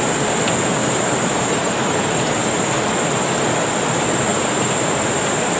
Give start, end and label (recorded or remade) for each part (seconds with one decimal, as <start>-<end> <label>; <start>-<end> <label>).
0.0-0.8 recorded; 0.8-2.2 remade; 2.2-4.3 recorded; 4.3-5.6 remade